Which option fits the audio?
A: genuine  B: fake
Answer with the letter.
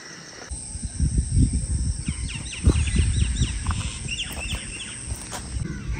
A